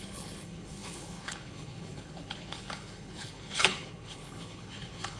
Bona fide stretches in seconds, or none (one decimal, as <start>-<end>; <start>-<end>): none